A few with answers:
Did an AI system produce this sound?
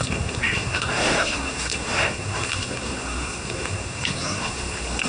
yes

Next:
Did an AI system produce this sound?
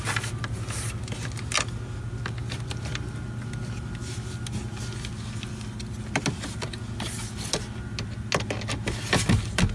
no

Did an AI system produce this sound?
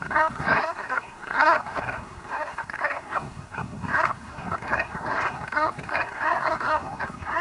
yes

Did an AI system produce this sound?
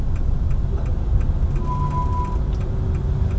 no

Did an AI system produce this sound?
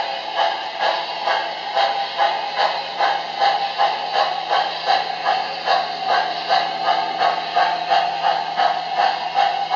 no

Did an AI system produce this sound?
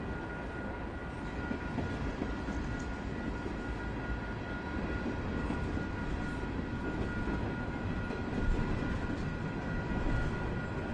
no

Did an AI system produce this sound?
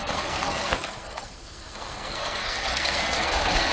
yes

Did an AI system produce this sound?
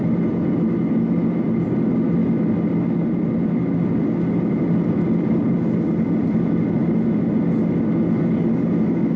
no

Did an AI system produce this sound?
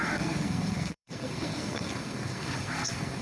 yes